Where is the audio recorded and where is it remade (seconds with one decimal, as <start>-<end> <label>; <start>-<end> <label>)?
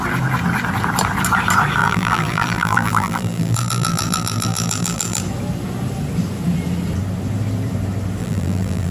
0.0-1.8 recorded; 1.8-5.2 remade; 5.2-8.2 recorded; 8.2-8.9 remade